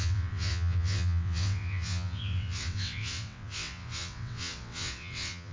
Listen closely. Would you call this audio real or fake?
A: fake